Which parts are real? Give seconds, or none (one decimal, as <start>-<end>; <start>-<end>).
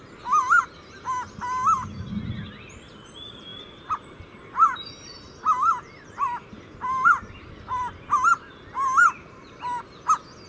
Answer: 0.0-10.5